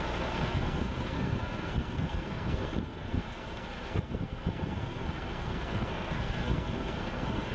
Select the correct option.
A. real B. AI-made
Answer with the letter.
B